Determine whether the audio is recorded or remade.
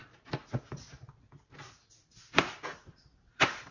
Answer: recorded